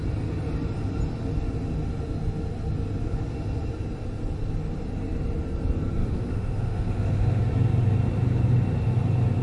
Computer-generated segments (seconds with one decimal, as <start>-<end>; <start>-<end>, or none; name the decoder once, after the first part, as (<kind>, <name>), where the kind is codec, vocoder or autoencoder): 6.0-7.4 (autoencoder, DAC-VAE)